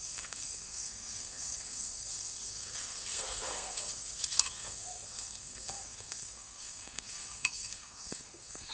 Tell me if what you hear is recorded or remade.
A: remade